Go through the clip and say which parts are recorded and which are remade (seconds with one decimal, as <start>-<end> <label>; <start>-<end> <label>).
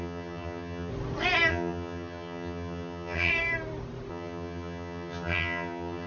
0.0-0.9 remade; 0.9-1.5 recorded; 1.5-3.3 remade; 3.3-4.1 recorded; 4.1-6.1 remade